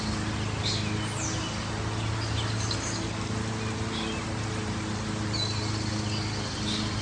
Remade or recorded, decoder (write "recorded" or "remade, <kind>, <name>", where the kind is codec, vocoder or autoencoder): recorded